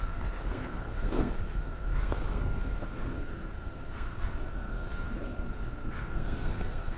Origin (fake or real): fake